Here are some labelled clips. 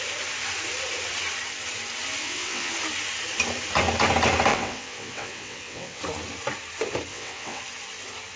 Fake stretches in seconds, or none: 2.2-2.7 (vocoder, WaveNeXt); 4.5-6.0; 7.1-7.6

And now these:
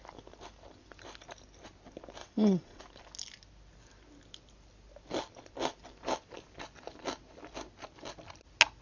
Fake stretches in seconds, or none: 2.2-2.8 (vocoder, WaveNeXt)

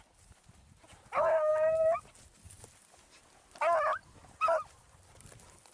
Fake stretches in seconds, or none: none

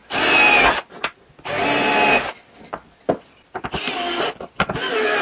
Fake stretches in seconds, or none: none

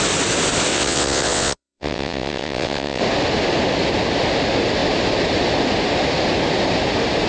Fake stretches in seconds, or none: 0.7-3.0 (vocoder, WaveNeXt)